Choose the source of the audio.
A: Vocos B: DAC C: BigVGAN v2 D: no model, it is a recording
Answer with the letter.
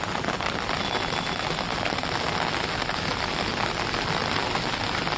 D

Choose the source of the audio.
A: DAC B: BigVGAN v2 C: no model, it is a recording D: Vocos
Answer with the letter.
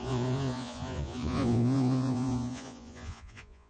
D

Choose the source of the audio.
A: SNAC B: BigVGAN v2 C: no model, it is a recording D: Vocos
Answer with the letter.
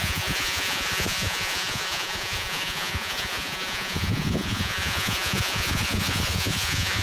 D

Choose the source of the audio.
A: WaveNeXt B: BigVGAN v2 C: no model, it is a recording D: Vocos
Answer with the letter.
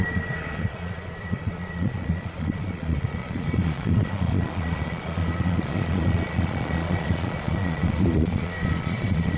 D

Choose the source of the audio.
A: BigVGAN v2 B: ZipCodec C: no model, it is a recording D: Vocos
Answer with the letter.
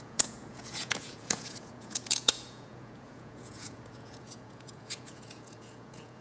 D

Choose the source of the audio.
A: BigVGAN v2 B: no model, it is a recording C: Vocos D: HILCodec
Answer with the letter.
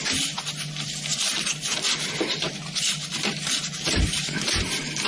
B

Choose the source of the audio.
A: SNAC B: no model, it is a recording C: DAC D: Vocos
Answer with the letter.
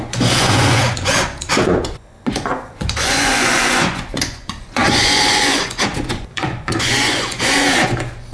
D